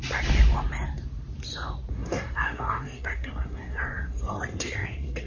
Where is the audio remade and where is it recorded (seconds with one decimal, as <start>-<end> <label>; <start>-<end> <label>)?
0.0-1.9 recorded; 1.9-5.3 remade